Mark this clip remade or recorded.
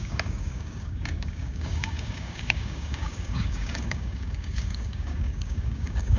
remade